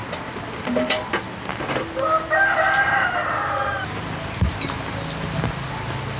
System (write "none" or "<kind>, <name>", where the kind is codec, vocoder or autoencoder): none